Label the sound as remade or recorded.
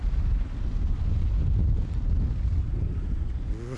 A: recorded